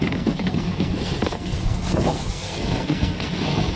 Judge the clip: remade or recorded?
remade